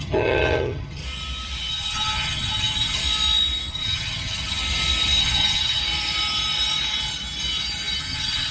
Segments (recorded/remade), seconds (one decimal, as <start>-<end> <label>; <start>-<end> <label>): 0.0-1.0 remade; 1.0-1.7 recorded; 1.7-3.0 remade; 3.0-3.7 recorded; 3.7-4.6 remade; 4.6-5.2 recorded; 5.2-5.8 remade; 5.8-8.0 recorded; 8.0-8.5 remade